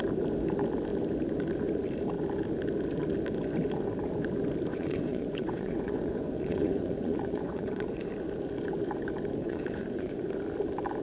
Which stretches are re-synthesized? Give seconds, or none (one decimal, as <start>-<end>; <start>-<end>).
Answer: 4.7-8.1; 9.4-10.3